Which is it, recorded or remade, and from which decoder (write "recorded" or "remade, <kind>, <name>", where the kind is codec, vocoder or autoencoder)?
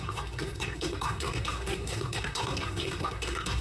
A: remade, codec, SNAC